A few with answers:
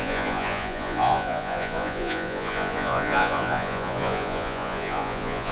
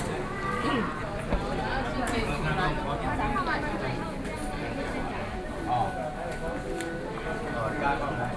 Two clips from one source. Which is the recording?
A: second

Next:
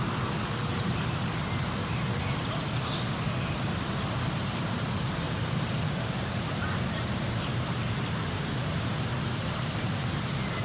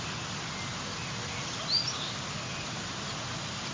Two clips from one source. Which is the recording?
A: second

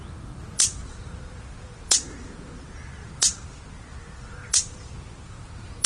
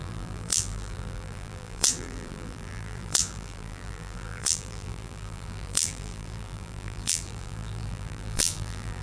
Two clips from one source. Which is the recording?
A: first